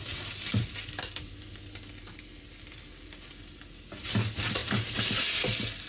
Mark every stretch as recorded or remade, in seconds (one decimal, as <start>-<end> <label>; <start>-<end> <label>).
0.0-5.9 recorded